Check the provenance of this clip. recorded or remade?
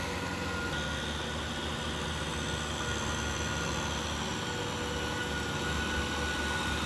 recorded